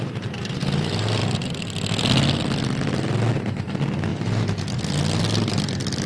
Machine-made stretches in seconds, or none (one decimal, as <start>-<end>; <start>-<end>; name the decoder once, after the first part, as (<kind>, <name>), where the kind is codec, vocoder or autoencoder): none